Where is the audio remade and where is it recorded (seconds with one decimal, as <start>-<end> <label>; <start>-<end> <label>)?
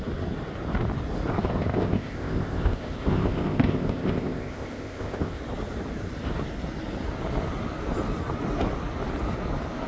0.0-1.3 recorded; 1.3-5.4 remade; 5.4-9.9 recorded